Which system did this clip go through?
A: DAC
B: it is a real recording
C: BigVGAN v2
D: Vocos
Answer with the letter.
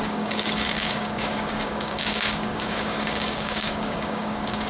A